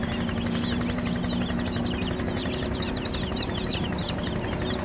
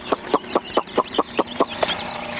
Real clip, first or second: first